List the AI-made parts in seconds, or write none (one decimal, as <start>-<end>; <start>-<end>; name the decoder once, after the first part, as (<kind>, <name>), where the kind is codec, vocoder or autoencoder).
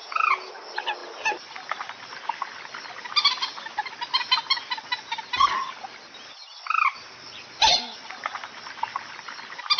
0.0-0.5 (vocoder, Vocos)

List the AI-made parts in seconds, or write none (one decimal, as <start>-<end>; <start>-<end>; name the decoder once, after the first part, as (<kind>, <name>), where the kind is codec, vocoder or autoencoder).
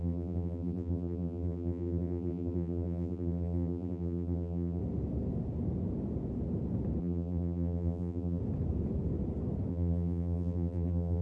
0.0-4.8 (vocoder, BigVGAN v2); 7.0-8.4; 9.7-11.2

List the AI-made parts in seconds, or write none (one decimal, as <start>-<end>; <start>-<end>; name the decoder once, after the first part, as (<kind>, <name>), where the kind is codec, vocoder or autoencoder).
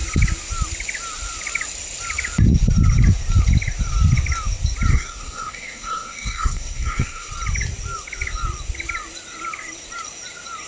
4.9-7.3 (codec, SNAC)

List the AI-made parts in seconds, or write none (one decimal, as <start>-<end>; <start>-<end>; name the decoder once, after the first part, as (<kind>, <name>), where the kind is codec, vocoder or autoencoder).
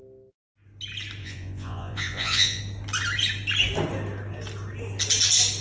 1.2-2.6 (vocoder, Vocos)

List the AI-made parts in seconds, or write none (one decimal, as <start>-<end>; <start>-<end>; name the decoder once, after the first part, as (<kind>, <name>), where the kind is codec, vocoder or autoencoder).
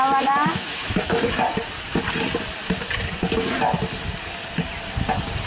0.5-1.3 (autoencoder, DAC-VAE)